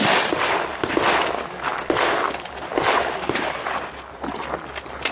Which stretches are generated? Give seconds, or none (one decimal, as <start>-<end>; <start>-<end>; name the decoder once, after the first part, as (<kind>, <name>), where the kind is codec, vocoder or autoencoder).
none

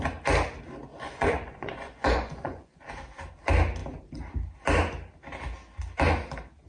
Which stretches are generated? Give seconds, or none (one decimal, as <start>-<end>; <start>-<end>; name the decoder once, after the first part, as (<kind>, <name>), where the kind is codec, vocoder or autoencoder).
0.9-2.8 (vocoder, Vocos)